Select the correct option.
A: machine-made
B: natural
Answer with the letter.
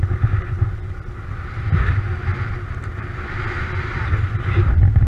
B